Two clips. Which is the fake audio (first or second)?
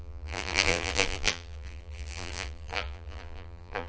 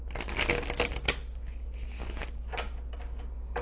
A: first